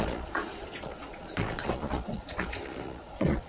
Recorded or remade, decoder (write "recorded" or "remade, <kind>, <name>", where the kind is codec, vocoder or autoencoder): remade, vocoder, Vocos